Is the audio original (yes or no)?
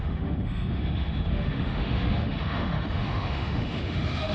no